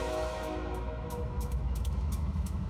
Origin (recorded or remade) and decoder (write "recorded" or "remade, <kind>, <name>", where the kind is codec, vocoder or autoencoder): remade, autoencoder, DAC-VAE